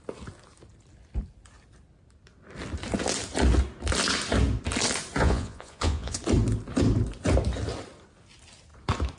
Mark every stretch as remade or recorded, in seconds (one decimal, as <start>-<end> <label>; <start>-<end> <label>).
0.0-5.2 recorded; 5.2-6.2 remade; 6.2-9.2 recorded